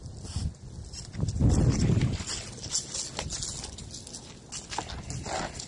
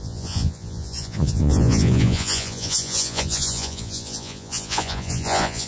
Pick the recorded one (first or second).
first